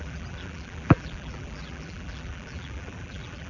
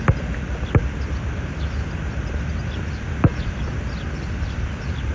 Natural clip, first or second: second